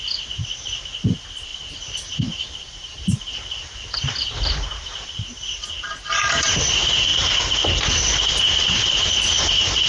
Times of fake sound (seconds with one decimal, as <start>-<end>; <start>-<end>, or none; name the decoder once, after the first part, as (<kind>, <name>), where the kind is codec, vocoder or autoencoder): 0.0-7.1 (vocoder, BigVGAN v2); 8.4-9.9